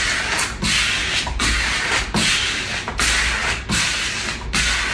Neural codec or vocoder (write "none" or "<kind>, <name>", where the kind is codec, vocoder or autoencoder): none